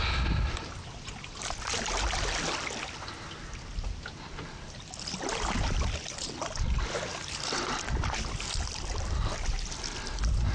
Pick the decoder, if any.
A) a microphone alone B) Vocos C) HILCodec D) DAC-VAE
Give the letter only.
A